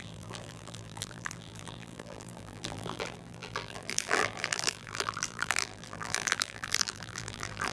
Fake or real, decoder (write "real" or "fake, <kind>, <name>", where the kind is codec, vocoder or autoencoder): fake, vocoder, BigVGAN v2